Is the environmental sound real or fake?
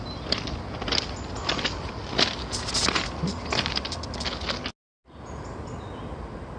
real